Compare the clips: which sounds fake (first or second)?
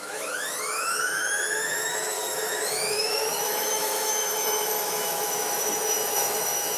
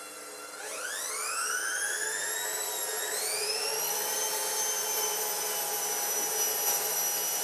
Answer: first